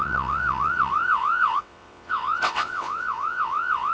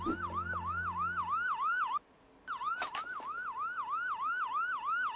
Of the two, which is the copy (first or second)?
first